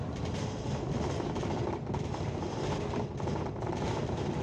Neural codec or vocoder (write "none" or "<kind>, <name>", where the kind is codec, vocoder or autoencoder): none